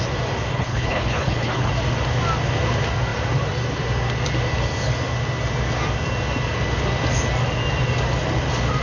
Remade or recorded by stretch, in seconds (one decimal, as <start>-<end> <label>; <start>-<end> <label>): 0.0-0.5 recorded; 0.5-1.7 remade; 1.7-8.8 recorded